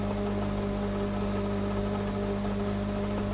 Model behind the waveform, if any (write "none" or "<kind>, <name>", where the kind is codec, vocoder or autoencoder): none